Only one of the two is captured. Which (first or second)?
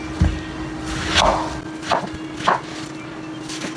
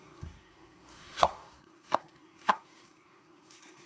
first